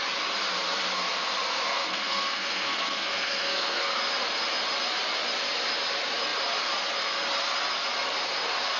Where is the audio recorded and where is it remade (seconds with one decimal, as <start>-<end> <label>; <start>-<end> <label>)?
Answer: 0.0-1.7 recorded; 1.7-3.9 remade; 3.9-8.8 recorded

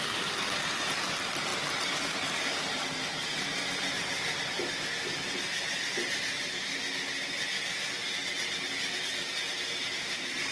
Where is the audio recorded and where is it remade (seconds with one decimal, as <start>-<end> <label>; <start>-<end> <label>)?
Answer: 0.0-10.5 recorded

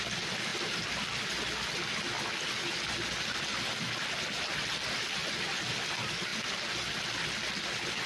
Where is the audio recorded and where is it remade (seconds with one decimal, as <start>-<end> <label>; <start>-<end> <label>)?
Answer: 0.0-8.1 recorded

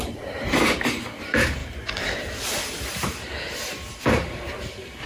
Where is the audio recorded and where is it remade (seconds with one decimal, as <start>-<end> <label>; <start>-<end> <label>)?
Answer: 0.0-1.6 remade; 1.6-2.5 recorded; 2.5-3.3 remade; 3.3-4.0 recorded; 4.0-5.1 remade

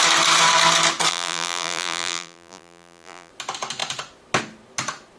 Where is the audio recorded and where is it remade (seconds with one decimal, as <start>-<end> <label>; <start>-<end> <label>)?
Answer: 0.0-1.1 recorded; 1.1-3.3 remade; 3.3-5.2 recorded

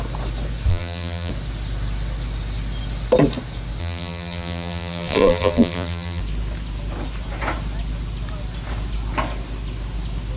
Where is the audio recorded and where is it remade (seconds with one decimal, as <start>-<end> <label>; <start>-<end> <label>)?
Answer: 0.0-0.7 recorded; 0.7-1.3 remade; 1.3-3.8 recorded; 3.8-6.2 remade; 6.2-10.4 recorded

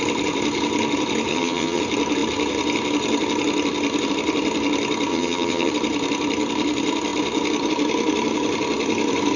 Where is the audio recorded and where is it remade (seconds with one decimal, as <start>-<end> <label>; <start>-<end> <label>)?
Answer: 0.0-1.3 recorded; 1.3-1.8 remade; 1.8-5.1 recorded; 5.1-5.7 remade; 5.7-9.4 recorded